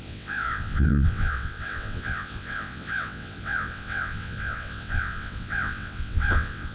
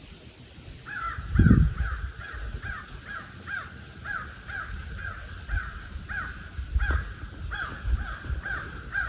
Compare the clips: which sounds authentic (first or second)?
second